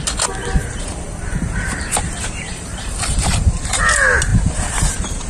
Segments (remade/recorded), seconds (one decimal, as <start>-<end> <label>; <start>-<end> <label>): 0.0-0.6 recorded; 0.6-3.8 remade; 3.8-4.3 recorded; 4.3-5.3 remade

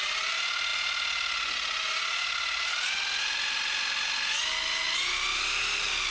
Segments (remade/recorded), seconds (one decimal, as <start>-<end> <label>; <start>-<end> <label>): 0.0-6.1 recorded

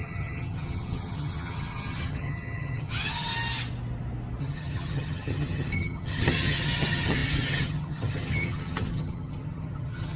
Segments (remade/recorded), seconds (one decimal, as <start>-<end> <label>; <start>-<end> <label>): 0.0-3.3 remade; 3.3-4.4 recorded; 4.4-10.2 remade

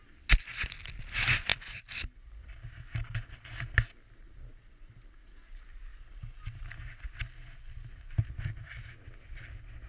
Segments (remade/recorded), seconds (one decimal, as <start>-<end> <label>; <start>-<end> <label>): 0.0-9.9 recorded

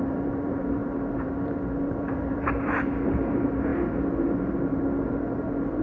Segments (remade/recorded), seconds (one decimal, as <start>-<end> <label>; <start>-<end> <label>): 0.0-3.7 remade; 3.7-4.2 recorded; 4.2-5.8 remade

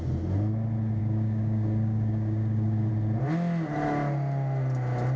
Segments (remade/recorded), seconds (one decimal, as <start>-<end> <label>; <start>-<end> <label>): 0.0-1.0 recorded; 1.0-2.9 remade; 2.9-5.2 recorded